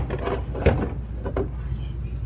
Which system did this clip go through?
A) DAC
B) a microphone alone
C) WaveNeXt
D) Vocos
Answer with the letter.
B